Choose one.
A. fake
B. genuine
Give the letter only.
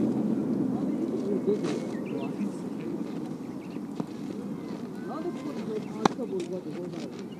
B